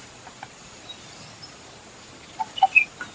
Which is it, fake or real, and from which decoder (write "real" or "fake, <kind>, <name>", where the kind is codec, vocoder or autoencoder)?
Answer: real